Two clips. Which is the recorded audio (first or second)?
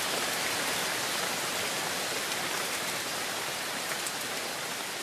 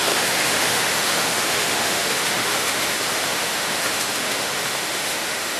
first